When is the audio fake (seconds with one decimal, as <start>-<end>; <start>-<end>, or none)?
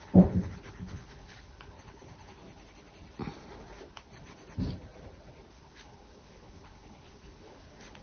0.0-2.4; 5.5-8.0